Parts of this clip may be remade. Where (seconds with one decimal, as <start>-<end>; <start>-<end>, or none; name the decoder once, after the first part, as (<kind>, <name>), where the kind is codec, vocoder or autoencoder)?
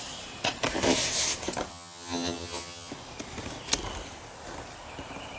1.7-2.9 (vocoder, HiFi-GAN)